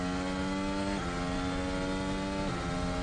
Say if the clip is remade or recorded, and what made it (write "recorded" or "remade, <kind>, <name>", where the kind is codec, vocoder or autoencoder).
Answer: recorded